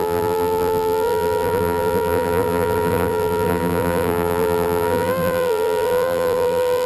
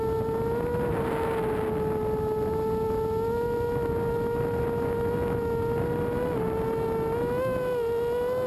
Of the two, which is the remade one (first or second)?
first